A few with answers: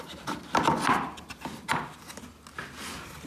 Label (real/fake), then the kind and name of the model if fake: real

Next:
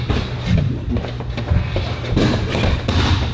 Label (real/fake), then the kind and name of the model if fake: real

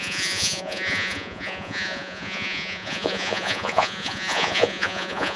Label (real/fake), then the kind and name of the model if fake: fake, vocoder, Vocos